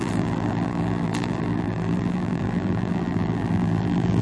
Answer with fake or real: fake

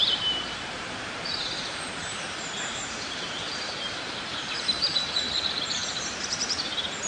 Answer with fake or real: fake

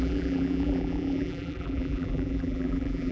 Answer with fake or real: fake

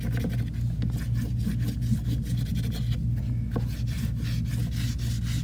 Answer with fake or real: real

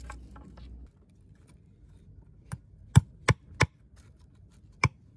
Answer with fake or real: real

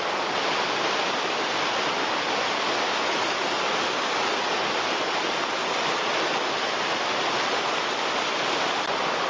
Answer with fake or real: real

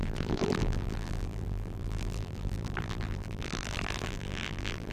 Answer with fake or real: fake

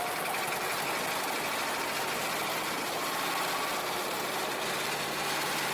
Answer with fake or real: real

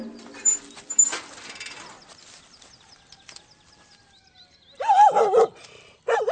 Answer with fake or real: real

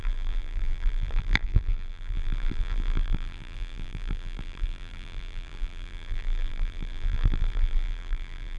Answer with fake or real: fake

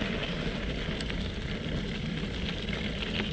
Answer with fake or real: real